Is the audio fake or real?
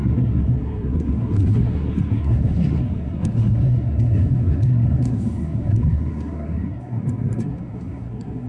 fake